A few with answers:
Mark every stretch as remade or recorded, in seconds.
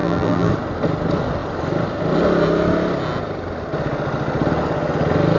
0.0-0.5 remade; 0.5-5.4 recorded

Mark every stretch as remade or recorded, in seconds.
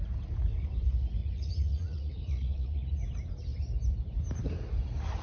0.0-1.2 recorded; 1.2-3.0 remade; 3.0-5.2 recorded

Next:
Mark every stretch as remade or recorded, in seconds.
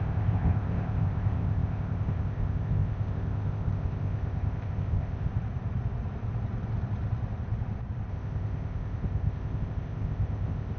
0.0-5.3 remade; 5.3-8.1 recorded; 8.1-10.8 remade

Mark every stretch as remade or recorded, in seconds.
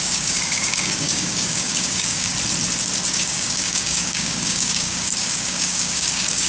0.0-2.3 remade; 2.3-3.1 recorded; 3.1-6.5 remade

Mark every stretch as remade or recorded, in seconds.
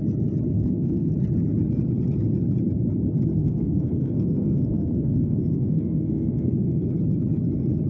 0.0-0.5 recorded; 0.5-1.1 remade; 1.1-3.4 recorded; 3.4-6.9 remade; 6.9-7.9 recorded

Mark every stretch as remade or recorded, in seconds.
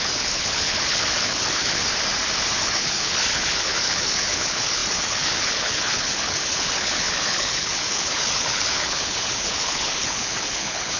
0.0-1.8 remade; 1.8-2.6 recorded; 2.6-11.0 remade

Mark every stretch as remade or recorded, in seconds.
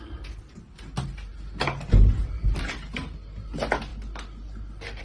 0.0-5.0 recorded